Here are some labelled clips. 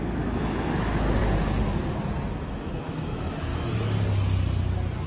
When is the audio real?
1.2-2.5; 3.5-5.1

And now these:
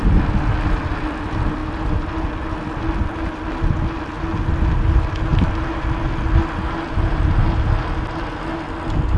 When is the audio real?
0.0-9.2